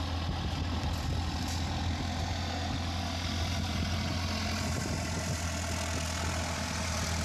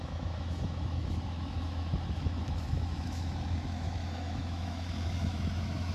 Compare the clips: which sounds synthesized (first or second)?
second